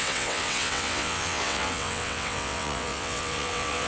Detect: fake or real fake